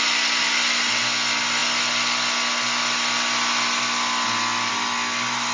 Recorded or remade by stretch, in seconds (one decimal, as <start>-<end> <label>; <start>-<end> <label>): 0.0-5.5 recorded